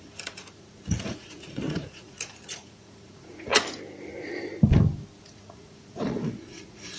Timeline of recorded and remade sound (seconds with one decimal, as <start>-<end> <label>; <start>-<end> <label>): 0.0-3.5 remade; 3.5-5.2 recorded; 5.2-7.0 remade